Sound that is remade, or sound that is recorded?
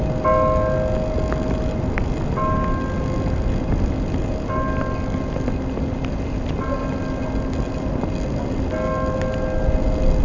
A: recorded